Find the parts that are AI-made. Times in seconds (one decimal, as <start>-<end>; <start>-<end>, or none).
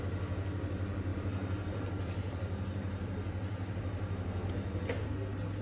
1.1-4.5